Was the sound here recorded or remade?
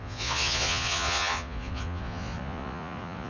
remade